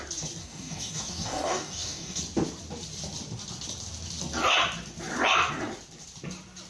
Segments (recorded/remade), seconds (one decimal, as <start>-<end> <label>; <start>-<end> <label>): 0.0-0.4 recorded; 0.4-2.2 remade; 2.2-6.7 recorded